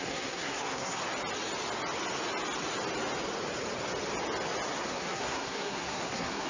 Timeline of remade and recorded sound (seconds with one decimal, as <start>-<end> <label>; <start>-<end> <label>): 0.0-1.0 remade; 1.0-4.8 recorded; 4.8-6.5 remade